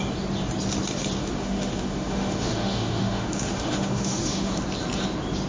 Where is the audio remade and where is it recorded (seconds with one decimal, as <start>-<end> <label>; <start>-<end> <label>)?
0.0-1.2 recorded; 1.2-4.5 remade; 4.5-5.5 recorded